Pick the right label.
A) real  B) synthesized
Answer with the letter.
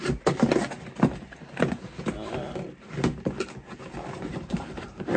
A